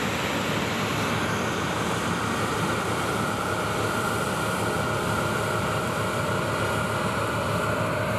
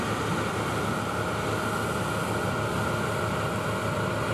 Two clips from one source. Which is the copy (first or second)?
first